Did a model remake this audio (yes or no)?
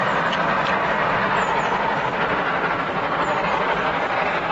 no